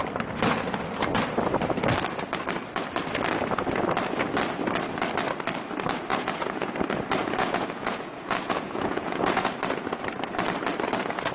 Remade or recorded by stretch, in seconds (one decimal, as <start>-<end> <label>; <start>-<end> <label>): 0.0-6.1 recorded; 6.1-6.7 remade; 6.7-7.2 recorded; 7.2-9.5 remade; 9.5-11.3 recorded